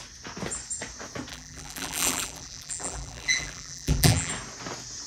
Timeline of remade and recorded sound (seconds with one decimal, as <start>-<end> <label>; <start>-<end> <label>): 0.0-1.3 recorded; 1.3-4.3 remade; 4.3-5.1 recorded